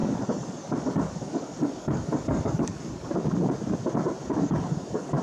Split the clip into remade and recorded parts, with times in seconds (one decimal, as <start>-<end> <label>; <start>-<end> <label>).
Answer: 0.0-3.1 remade; 3.1-4.2 recorded; 4.2-5.2 remade